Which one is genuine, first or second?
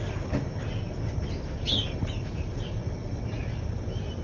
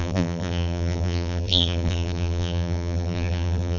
first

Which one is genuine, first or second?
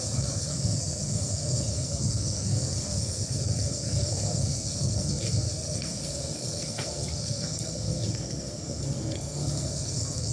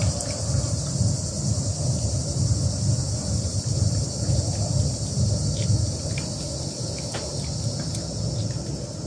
second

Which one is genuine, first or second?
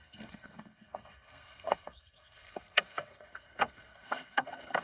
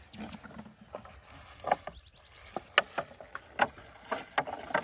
second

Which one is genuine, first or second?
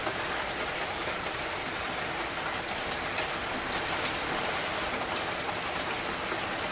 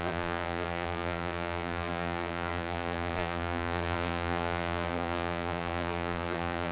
first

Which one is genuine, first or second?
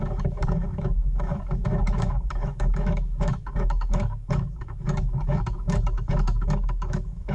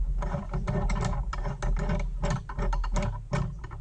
second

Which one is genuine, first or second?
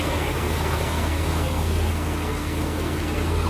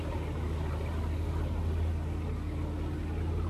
second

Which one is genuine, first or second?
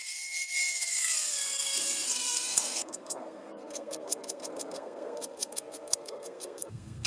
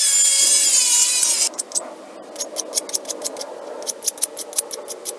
second